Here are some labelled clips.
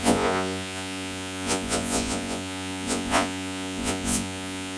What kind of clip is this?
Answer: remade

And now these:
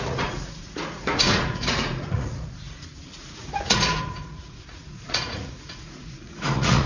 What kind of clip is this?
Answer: remade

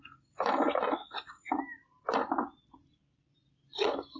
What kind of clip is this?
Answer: recorded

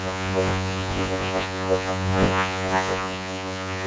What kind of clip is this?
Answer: remade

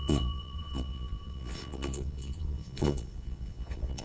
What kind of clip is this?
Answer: remade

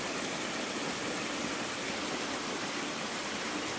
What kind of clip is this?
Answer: recorded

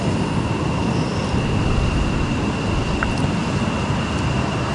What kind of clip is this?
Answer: recorded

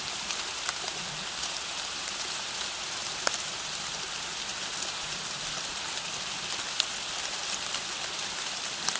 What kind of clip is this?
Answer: recorded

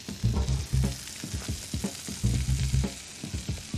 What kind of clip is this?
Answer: recorded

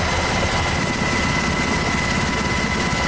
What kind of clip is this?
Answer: recorded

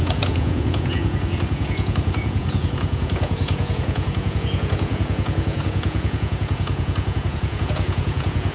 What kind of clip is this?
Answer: remade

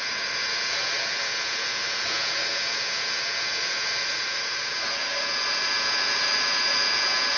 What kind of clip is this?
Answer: remade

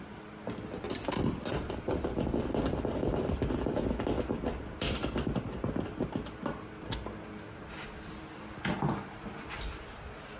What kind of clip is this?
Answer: recorded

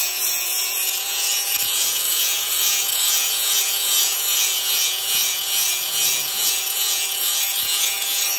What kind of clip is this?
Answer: remade